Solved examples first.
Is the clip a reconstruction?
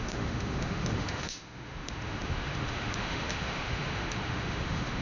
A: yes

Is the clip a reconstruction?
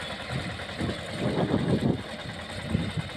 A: no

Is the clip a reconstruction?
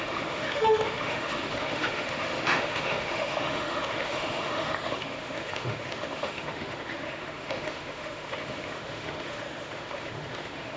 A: yes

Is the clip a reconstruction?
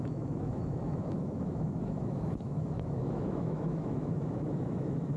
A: yes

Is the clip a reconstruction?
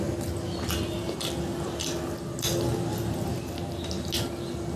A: no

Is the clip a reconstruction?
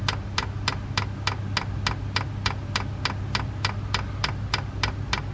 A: no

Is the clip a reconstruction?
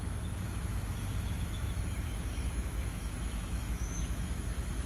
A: yes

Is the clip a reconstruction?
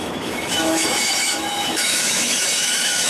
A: yes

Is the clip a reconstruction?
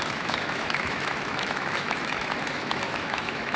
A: yes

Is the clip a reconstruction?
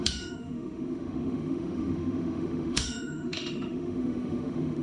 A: yes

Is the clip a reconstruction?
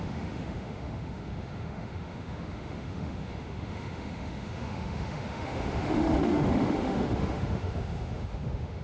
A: yes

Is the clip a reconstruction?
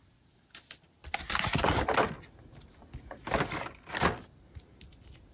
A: no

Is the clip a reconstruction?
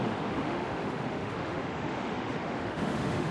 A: yes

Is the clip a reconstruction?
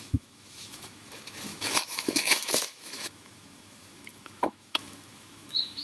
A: yes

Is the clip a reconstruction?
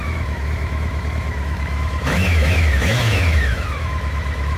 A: yes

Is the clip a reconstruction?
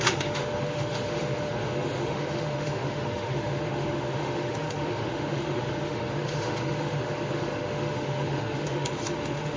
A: yes